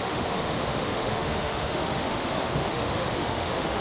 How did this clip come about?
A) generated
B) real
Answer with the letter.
A